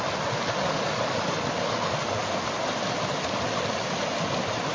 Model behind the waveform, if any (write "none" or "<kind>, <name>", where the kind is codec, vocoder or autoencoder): none